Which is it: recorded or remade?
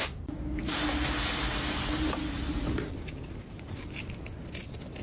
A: recorded